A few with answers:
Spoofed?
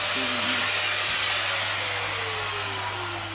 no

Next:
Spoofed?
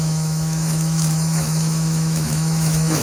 yes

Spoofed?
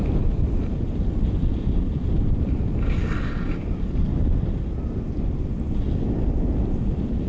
no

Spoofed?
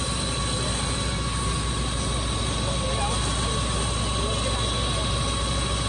no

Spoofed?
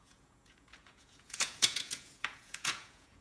yes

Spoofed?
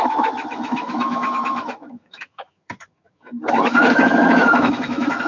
yes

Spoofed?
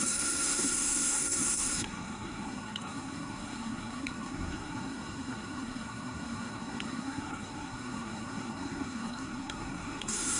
yes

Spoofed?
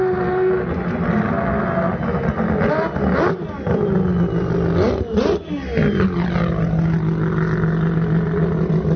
no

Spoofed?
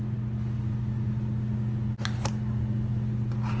no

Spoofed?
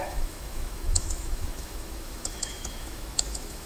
yes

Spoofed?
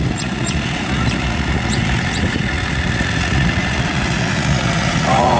yes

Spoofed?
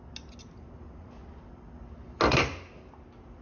no